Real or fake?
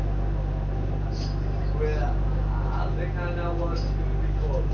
real